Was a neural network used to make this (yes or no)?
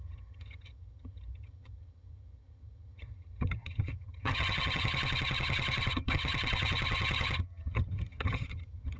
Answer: yes